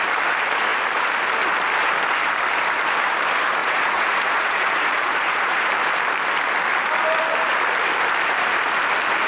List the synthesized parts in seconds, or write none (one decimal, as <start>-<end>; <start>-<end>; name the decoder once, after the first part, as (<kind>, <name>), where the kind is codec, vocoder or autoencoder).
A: 3.6-5.7 (vocoder, Vocos)